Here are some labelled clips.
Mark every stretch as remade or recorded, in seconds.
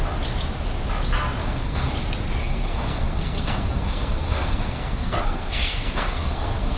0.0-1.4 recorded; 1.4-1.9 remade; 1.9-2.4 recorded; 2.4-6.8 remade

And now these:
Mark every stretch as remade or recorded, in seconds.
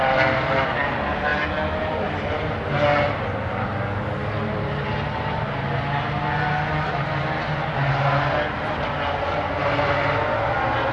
0.0-10.9 recorded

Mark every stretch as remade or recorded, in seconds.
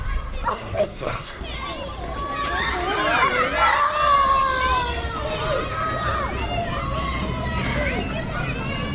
0.0-0.5 recorded; 0.5-1.4 remade; 1.4-8.9 recorded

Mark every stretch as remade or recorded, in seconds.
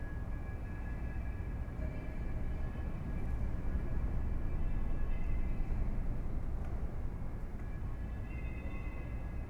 0.0-9.5 recorded